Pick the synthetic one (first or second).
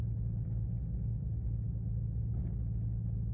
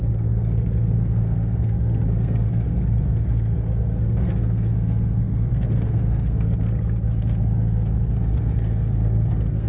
second